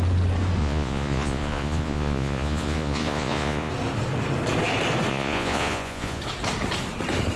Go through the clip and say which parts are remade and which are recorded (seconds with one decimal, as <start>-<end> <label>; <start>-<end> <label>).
0.0-0.6 recorded; 0.6-3.7 remade; 3.7-5.1 recorded; 5.1-6.2 remade; 6.2-7.4 recorded